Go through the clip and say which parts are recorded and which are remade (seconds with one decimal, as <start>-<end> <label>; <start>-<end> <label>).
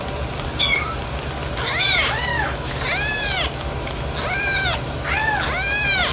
0.0-2.3 recorded; 2.3-2.8 remade; 2.8-6.1 recorded